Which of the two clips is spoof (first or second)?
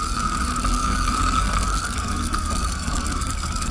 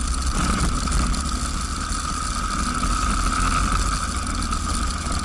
first